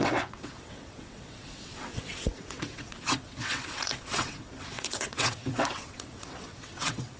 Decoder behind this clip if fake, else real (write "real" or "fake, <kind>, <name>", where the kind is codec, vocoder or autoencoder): fake, vocoder, WaveNeXt